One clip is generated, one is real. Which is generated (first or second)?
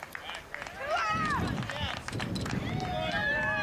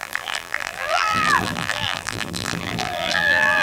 second